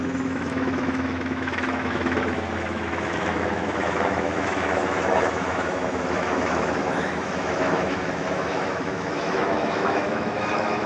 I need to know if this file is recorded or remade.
remade